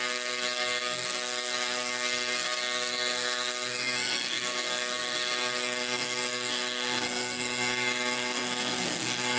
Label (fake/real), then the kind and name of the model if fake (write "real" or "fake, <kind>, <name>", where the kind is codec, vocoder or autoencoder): fake, codec, SNAC